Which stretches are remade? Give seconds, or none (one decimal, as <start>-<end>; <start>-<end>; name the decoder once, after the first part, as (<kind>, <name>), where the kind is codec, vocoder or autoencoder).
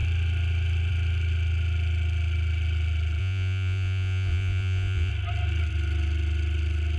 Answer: 3.2-5.1 (vocoder, Vocos)